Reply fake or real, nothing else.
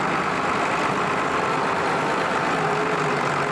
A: real